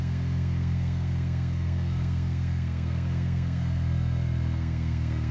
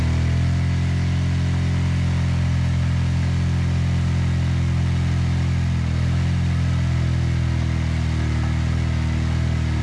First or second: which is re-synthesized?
first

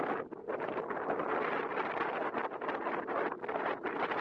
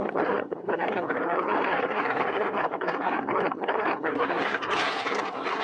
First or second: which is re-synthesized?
second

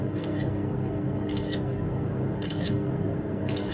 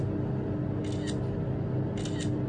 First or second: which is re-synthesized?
first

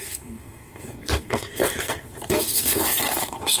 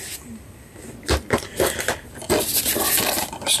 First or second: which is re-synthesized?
first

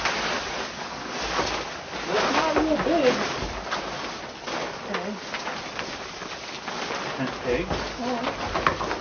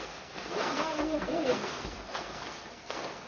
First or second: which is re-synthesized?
second